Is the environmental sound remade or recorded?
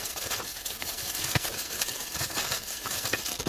remade